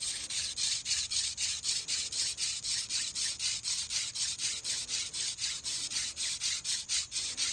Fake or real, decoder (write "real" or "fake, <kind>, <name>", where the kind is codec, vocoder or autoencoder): real